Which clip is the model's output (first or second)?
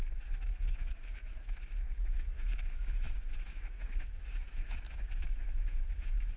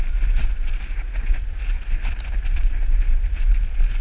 first